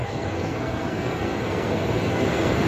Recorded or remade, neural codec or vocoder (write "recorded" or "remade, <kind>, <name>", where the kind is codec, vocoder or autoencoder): remade, codec, SNAC